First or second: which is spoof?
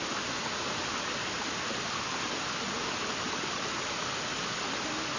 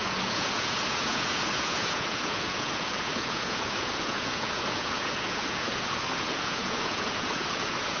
second